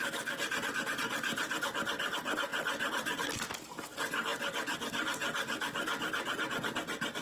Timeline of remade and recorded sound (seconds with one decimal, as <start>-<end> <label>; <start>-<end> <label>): 0.0-7.2 recorded